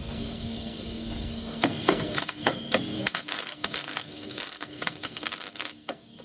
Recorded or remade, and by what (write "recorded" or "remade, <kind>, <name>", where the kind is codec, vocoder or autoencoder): remade, codec, SNAC